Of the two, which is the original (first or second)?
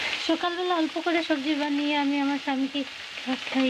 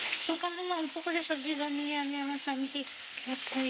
first